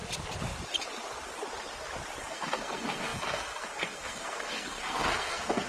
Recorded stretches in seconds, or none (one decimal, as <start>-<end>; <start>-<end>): 0.0-2.2